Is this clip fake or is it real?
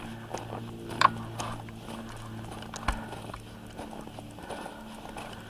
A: real